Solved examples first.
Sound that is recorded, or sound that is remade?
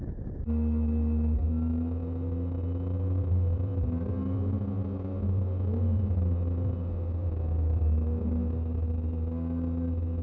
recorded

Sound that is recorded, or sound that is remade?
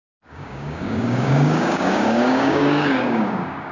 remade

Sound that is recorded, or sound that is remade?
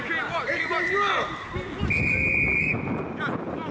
recorded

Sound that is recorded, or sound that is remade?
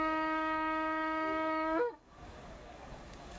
remade